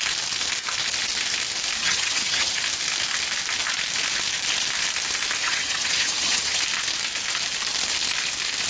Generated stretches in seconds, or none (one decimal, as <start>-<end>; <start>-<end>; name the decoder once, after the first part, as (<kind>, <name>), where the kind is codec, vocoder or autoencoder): 1.8-2.6 (vocoder, HiFi-GAN); 5.4-6.6